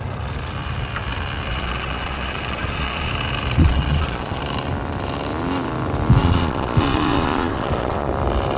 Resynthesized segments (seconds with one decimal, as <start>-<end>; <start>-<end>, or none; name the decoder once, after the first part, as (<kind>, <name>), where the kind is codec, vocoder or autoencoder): 1.5-3.1 (vocoder, Vocos); 3.6-4.4; 6.2-8.1